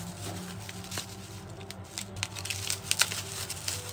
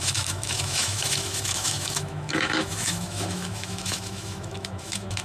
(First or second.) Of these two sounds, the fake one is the second